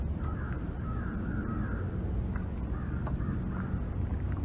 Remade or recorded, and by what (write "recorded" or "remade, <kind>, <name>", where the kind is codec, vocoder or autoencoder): recorded